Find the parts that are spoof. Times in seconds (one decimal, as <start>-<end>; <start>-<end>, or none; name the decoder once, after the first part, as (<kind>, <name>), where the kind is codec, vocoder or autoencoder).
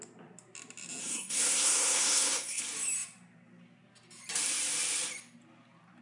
1.0-2.6 (codec, SNAC)